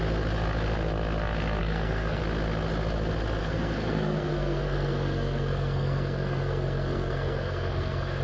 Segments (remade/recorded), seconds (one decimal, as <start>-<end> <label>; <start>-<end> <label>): 0.0-1.6 recorded; 1.6-2.2 remade; 2.2-3.4 recorded; 3.4-8.2 remade